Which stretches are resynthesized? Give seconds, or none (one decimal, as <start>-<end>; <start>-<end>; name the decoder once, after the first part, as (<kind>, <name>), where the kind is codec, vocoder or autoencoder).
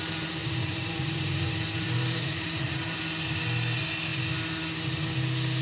0.4-3.0 (vocoder, BigVGAN v2)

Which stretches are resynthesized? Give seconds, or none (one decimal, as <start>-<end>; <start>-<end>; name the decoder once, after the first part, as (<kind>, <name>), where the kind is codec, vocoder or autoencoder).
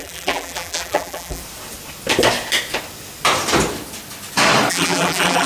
0.0-1.4 (vocoder, BigVGAN v2); 4.7-5.5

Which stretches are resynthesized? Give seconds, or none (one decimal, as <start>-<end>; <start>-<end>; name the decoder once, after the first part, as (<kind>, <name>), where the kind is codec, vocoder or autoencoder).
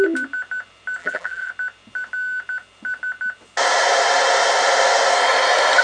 1.0-1.5 (vocoder, BigVGAN v2)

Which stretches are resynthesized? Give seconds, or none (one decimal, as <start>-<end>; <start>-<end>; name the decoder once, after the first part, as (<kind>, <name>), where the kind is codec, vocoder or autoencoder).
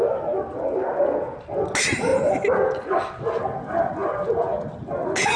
none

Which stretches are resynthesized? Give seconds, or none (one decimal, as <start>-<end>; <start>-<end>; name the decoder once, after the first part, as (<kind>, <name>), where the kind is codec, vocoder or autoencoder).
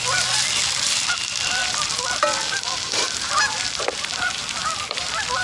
0.0-5.4 (vocoder, BigVGAN v2)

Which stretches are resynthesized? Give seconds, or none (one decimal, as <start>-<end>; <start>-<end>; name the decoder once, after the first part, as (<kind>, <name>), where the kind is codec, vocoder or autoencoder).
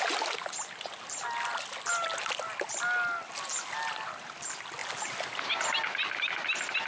none